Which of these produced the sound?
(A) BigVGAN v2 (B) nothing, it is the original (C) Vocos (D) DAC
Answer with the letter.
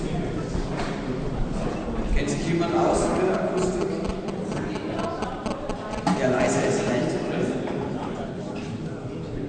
B